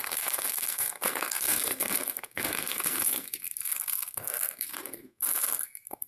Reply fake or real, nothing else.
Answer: fake